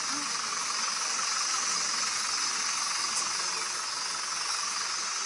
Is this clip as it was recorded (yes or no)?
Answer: yes